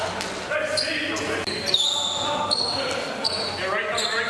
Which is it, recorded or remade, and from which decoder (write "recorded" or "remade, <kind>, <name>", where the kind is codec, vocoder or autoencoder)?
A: recorded